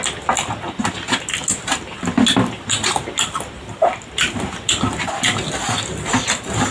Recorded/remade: recorded